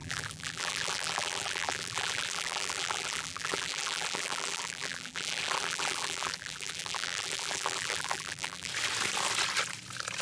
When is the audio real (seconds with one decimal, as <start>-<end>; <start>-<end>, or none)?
8.7-10.2